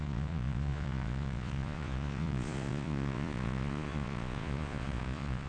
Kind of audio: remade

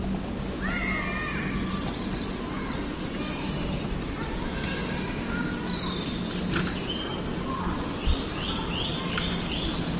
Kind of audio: recorded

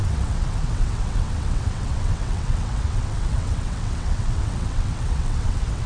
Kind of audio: remade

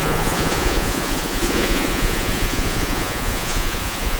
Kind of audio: remade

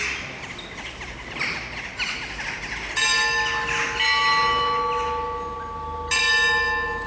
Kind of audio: recorded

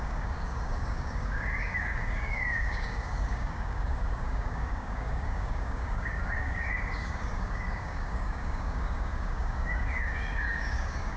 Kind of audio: remade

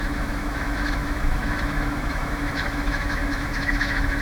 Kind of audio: remade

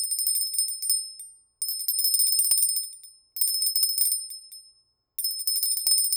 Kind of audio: recorded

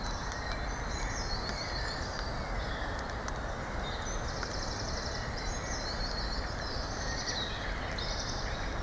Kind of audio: recorded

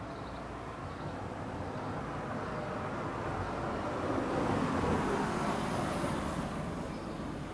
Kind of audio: recorded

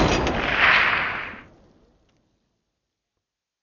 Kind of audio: recorded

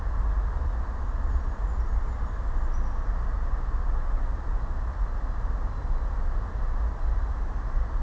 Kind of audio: recorded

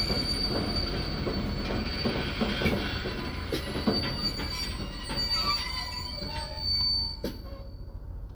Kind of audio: recorded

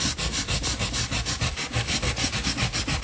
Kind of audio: recorded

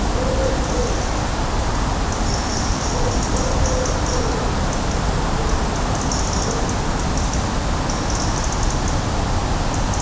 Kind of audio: recorded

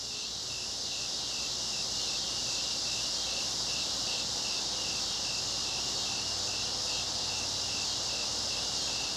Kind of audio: recorded